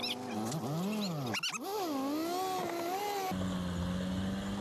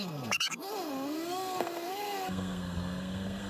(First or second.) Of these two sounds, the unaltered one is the first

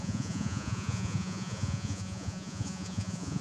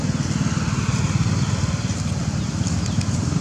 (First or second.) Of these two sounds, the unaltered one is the second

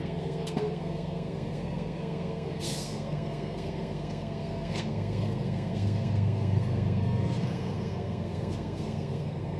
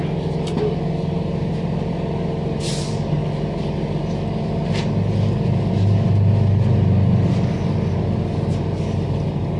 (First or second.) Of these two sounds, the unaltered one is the second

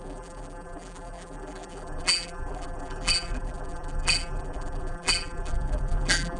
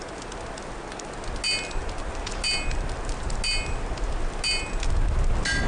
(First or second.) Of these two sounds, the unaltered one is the second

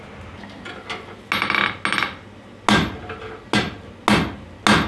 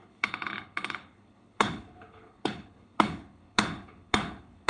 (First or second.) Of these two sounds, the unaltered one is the first